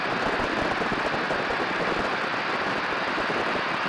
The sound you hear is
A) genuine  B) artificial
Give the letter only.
A